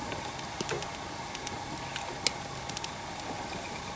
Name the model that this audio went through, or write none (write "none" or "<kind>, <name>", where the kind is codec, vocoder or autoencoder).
none